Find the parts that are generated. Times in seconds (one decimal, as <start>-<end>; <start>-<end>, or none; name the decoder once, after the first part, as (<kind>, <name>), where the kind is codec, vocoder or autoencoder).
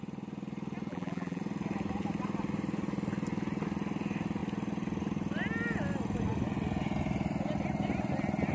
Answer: 0.9-1.4 (vocoder, BigVGAN v2)